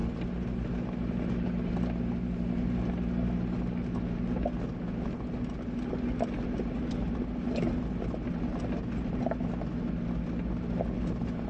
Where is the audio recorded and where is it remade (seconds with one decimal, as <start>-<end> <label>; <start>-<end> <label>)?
0.0-11.5 recorded